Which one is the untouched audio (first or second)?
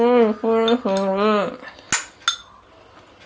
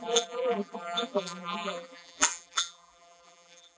first